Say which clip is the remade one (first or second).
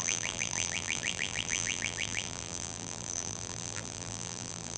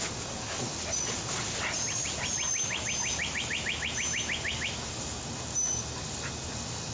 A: first